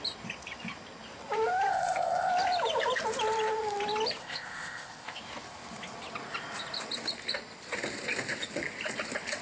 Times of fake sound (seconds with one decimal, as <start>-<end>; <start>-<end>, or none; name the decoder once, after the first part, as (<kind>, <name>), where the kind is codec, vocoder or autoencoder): 1.7-2.3 (codec, ZipCodec); 4.2-5.2